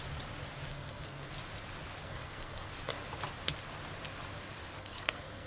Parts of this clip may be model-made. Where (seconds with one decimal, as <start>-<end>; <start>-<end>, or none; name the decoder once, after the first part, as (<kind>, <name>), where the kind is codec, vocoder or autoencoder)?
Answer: 0.7-1.3 (codec, SNAC); 2.0-2.7; 4.8-5.5